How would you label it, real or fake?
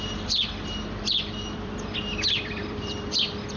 fake